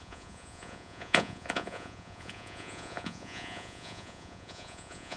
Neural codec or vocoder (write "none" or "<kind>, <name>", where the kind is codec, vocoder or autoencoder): vocoder, Vocos